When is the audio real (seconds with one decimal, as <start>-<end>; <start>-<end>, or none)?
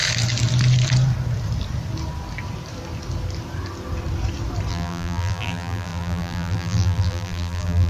0.0-4.7